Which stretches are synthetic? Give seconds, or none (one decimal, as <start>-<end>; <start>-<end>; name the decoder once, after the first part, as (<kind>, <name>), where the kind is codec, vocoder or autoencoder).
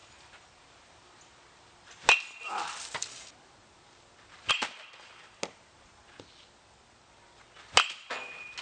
none